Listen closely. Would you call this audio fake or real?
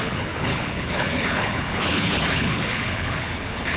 fake